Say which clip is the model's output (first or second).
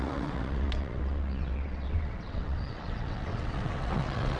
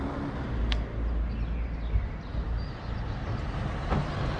first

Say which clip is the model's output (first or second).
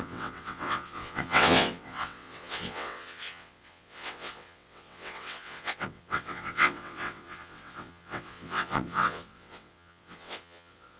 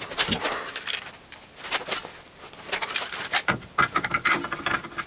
first